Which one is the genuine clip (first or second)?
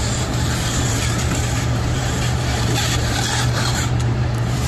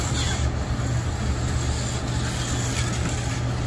second